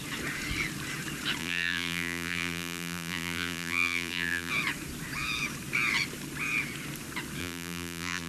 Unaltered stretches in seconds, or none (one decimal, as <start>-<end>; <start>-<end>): 0.0-1.4; 4.5-7.4